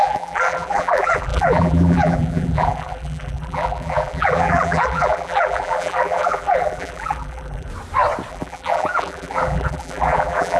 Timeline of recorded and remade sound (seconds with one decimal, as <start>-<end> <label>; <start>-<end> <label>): 0.0-7.7 remade; 7.7-8.3 recorded; 8.3-10.6 remade